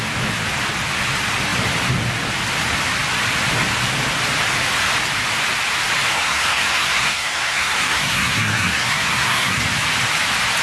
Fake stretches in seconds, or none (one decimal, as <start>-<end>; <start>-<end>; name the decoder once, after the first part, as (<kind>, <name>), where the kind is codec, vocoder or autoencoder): 6.1-9.6 (codec, SNAC)